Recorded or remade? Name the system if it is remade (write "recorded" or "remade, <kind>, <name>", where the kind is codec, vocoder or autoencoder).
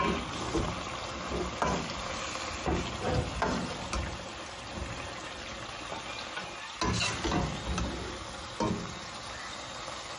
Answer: recorded